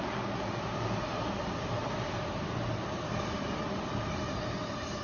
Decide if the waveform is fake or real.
real